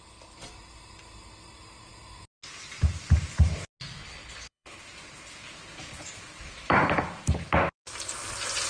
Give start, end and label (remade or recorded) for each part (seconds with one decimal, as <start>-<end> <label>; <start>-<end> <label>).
0.0-4.0 recorded; 4.0-4.8 remade; 4.8-8.7 recorded